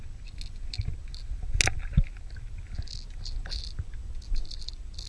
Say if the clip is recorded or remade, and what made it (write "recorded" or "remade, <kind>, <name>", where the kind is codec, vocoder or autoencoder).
recorded